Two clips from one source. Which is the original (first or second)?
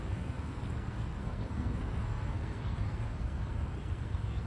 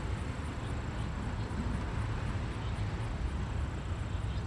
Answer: second